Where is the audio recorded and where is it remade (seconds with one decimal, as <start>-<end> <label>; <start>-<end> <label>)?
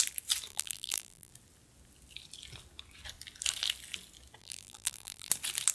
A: 0.0-0.5 recorded; 0.5-1.3 remade; 1.3-4.4 recorded; 4.4-5.3 remade; 5.3-5.7 recorded